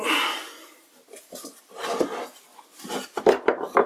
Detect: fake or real real